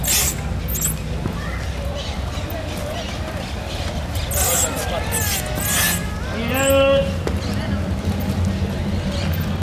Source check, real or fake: real